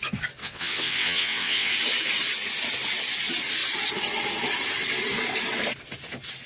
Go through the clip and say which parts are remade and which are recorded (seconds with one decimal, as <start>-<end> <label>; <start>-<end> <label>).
0.0-0.4 recorded; 0.4-1.7 remade; 1.7-6.5 recorded